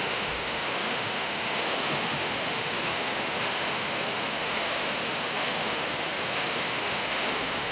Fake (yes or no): yes